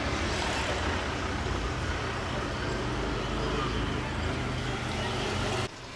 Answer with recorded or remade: recorded